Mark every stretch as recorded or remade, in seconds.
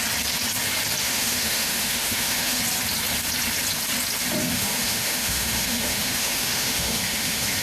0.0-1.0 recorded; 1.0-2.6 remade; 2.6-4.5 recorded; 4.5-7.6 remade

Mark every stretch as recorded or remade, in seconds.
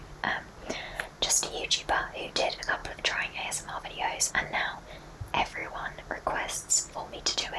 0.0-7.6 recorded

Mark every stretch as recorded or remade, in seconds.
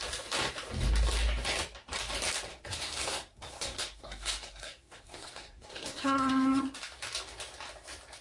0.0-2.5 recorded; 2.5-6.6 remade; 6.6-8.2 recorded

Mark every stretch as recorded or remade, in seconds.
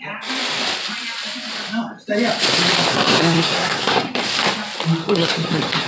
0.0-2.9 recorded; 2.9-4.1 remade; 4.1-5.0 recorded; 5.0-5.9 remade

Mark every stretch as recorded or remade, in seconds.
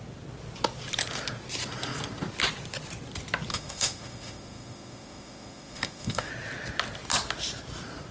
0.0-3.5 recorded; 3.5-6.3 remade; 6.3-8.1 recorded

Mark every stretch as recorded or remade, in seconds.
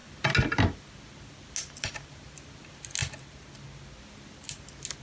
0.0-5.0 recorded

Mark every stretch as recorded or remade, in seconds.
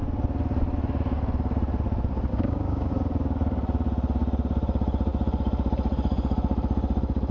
0.0-2.3 recorded; 2.3-2.9 remade; 2.9-7.3 recorded